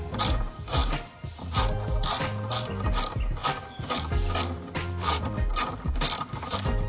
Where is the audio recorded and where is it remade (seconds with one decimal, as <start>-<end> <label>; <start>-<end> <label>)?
0.0-0.8 remade; 0.8-4.9 recorded; 4.9-6.9 remade